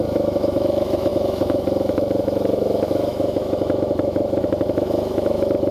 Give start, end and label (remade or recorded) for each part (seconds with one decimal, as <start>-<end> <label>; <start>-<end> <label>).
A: 0.0-5.7 remade